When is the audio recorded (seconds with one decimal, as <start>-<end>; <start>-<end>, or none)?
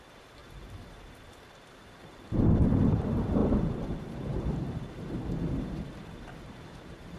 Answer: 0.4-2.9